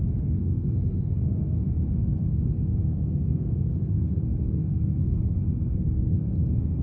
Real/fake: fake